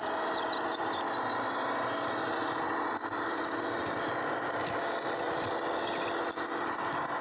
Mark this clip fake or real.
real